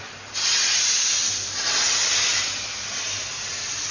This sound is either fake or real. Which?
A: real